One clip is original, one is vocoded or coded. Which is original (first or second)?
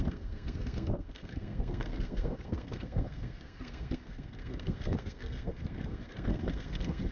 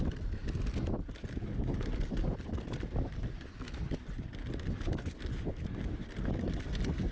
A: second